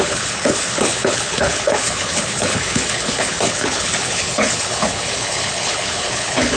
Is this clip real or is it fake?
fake